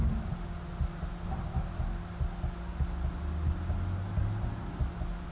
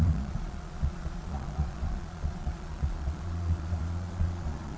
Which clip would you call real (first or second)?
first